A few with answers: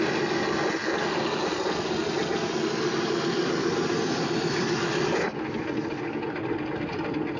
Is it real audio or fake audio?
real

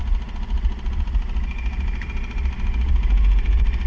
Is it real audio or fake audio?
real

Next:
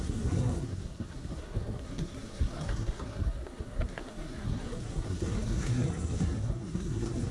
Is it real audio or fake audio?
fake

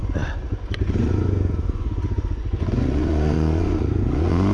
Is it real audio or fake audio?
fake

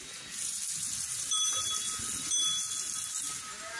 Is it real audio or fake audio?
real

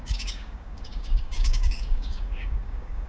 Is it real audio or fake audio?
fake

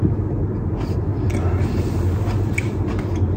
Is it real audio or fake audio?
real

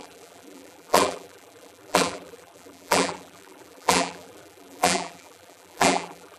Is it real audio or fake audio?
fake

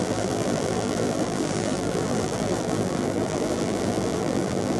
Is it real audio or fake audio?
fake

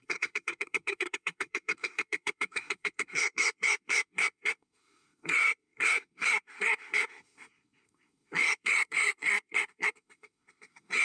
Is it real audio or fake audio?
fake